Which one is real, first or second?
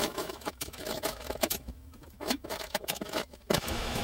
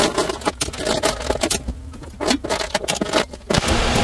second